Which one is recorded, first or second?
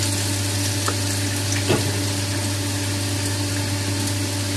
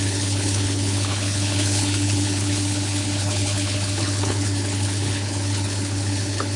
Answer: first